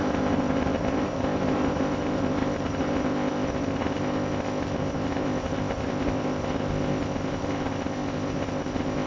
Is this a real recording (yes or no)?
no